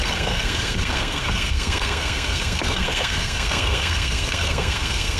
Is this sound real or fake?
fake